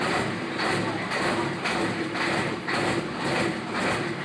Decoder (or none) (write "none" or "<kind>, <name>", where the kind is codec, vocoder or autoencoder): none